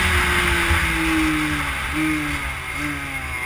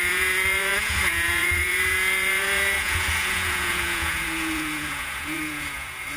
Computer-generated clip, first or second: second